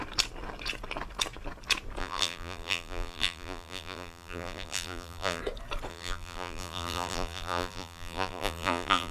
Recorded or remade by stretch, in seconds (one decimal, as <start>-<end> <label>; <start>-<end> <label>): 0.0-2.0 recorded; 2.0-5.4 remade; 5.4-5.9 recorded; 5.9-9.1 remade